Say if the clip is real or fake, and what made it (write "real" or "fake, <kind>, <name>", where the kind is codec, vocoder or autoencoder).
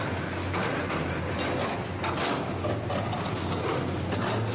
real